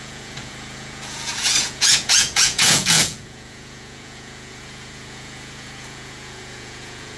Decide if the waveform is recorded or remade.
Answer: remade